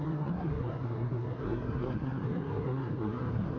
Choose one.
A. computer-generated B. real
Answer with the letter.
A